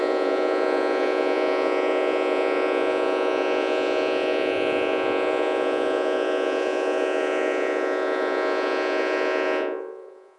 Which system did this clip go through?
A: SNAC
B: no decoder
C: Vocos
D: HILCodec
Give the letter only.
C